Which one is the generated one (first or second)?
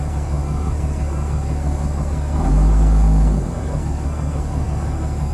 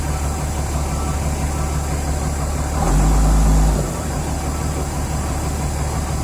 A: first